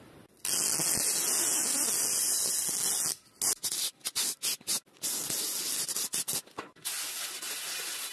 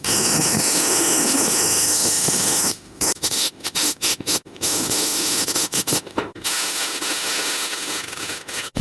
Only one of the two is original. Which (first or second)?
first